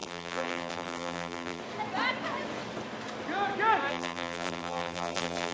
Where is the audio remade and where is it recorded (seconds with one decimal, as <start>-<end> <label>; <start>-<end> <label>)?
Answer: 0.0-1.6 remade; 1.6-3.9 recorded; 3.9-5.5 remade